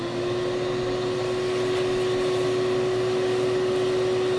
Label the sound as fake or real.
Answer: real